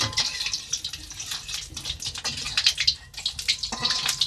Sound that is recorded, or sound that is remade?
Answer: recorded